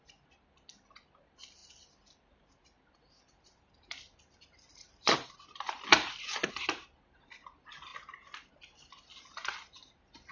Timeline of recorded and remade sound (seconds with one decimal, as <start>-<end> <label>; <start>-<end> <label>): 0.0-1.6 recorded; 1.6-6.5 remade; 6.5-10.3 recorded